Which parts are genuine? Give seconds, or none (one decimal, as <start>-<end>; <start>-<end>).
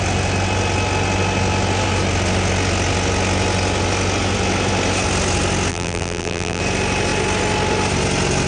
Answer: 0.0-5.7; 6.6-8.5